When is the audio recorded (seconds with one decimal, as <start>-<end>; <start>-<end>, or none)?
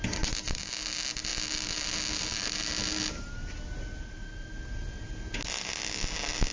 0.0-6.5